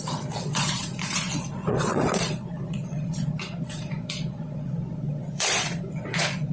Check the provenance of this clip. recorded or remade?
remade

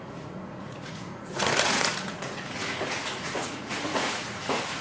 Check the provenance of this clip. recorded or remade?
remade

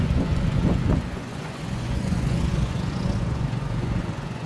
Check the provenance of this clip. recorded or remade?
remade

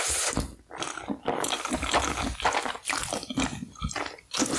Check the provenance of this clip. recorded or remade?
recorded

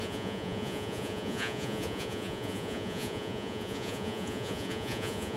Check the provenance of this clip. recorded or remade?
remade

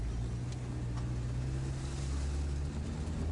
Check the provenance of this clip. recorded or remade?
recorded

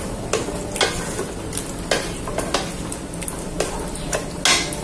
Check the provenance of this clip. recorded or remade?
recorded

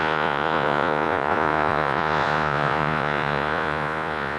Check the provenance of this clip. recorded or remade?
remade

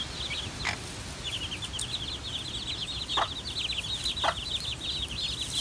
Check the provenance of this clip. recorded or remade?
recorded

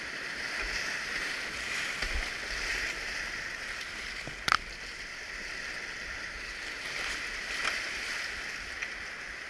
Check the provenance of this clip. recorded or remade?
recorded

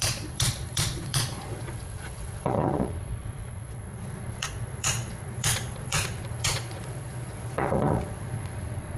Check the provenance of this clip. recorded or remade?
remade